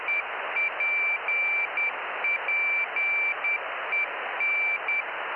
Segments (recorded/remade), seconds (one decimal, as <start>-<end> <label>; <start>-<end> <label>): 0.0-5.4 recorded